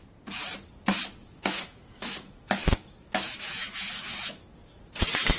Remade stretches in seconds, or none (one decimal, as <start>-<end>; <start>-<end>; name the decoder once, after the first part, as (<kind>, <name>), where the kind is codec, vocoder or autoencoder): 1.2-4.4 (autoencoder, DAC-VAE)